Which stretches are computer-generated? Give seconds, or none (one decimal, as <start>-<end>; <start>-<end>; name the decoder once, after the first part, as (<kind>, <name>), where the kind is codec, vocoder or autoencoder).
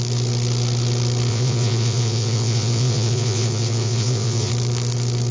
1.3-4.5 (vocoder, Vocos)